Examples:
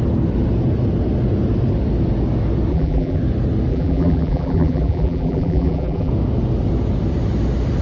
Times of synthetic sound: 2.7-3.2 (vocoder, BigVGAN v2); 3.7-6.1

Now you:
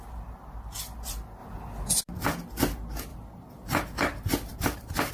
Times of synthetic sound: 3.1-5.1 (vocoder, BigVGAN v2)